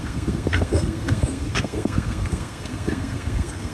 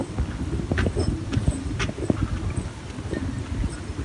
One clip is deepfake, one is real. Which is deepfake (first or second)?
first